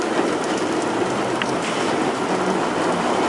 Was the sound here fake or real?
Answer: real